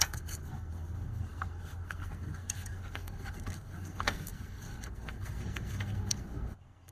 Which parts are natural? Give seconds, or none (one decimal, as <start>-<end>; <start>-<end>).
none